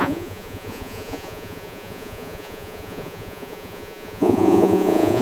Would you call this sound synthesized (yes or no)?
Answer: yes